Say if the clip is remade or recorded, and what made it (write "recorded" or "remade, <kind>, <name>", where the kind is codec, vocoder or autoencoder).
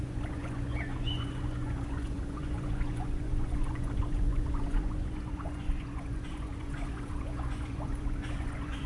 remade, vocoder, Vocos